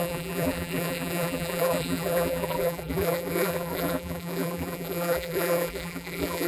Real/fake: fake